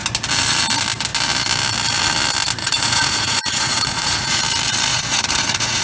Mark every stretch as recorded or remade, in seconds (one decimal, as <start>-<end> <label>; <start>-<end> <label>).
0.0-2.6 recorded; 2.6-4.4 remade; 4.4-4.9 recorded; 4.9-5.8 remade